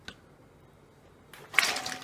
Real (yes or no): yes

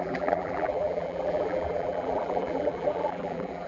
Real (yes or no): no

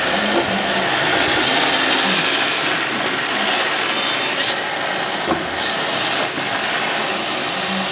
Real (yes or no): yes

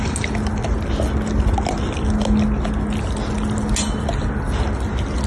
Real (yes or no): yes